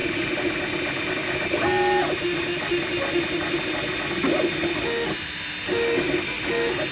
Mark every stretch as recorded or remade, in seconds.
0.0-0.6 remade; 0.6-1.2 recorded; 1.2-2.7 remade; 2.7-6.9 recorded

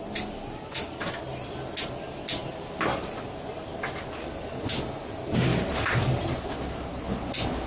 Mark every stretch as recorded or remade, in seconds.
0.0-5.5 recorded; 5.5-6.5 remade; 6.5-7.7 recorded

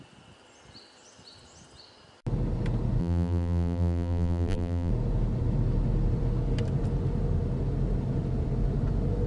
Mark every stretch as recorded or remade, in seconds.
0.0-3.0 recorded; 3.0-4.9 remade; 4.9-9.3 recorded

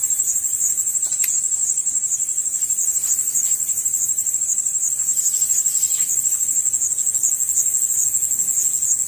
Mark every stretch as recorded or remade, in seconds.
0.0-6.6 remade; 6.6-9.1 recorded

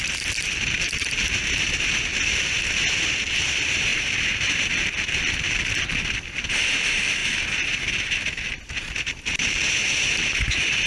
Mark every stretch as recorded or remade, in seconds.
0.0-2.1 remade; 2.1-3.4 recorded; 3.4-7.2 remade; 7.2-8.7 recorded; 8.7-10.9 remade